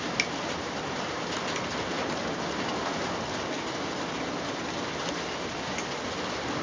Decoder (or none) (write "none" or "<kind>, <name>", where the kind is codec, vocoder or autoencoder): none